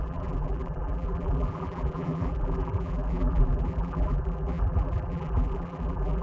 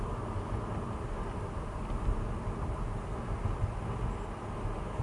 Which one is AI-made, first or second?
first